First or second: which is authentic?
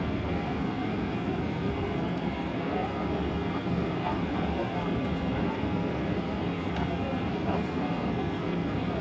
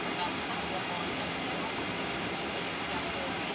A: second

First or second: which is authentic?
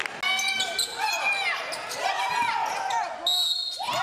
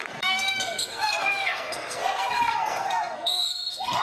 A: first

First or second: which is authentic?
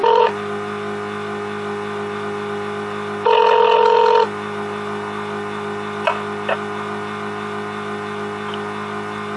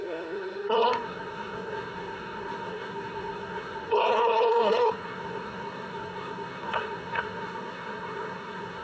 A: first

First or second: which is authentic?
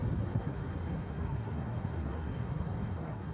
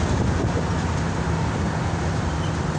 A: second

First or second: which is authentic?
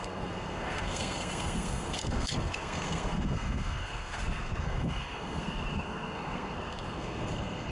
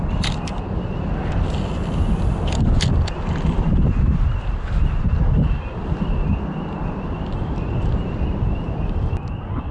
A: second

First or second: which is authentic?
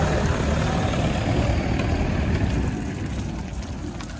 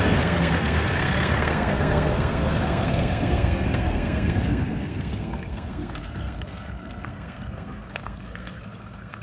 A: first